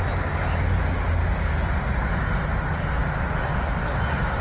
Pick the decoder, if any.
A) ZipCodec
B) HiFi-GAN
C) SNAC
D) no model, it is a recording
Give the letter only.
D